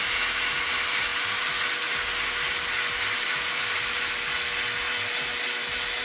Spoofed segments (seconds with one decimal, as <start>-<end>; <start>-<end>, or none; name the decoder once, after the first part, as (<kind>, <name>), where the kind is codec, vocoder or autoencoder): none